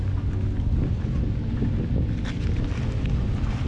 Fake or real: real